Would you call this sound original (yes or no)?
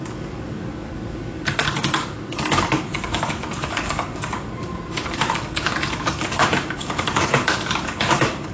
no